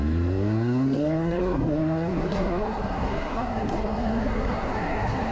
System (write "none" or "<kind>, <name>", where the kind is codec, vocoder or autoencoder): codec, SNAC